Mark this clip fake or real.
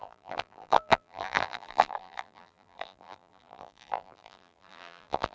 fake